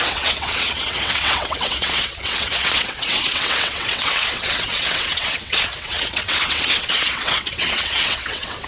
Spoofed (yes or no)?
yes